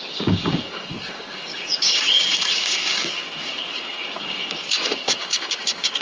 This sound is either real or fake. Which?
fake